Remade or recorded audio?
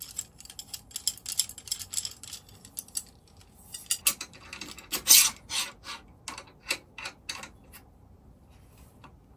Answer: recorded